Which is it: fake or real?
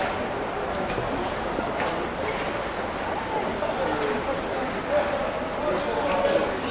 real